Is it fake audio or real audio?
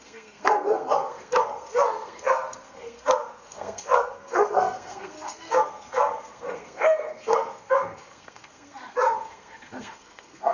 fake